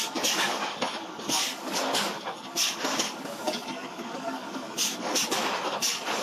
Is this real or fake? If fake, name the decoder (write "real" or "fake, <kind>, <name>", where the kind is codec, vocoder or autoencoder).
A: fake, codec, DAC